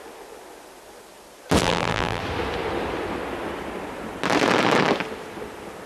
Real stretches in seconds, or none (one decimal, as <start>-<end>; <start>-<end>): 0.0-1.6; 2.2-5.9